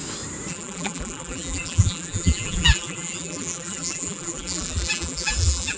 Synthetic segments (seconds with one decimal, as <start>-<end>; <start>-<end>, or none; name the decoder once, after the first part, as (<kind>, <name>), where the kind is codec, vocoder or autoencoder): 0.5-5.8 (vocoder, BigVGAN v2)